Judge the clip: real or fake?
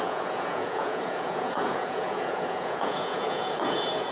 fake